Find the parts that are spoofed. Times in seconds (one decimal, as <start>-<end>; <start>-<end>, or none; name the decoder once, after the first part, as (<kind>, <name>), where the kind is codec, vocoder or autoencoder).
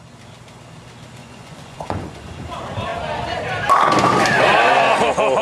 1.2-2.4 (vocoder, Vocos)